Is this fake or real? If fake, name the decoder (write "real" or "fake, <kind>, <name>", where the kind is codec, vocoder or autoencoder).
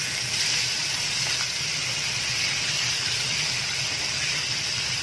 real